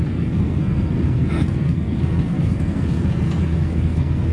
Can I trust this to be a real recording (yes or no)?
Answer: no